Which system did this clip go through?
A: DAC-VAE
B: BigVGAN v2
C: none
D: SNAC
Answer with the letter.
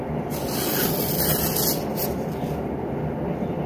C